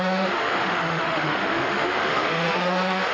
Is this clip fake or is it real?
fake